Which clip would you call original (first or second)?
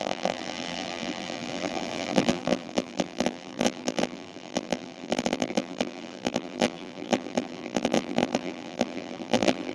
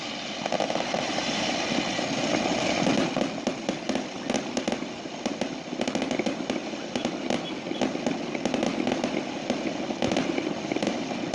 second